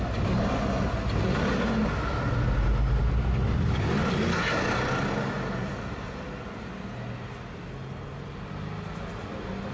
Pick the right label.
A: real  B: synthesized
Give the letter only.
A